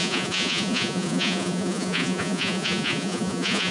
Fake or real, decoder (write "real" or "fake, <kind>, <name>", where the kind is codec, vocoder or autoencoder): fake, vocoder, Vocos